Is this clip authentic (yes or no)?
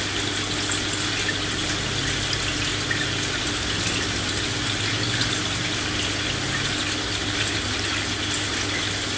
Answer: yes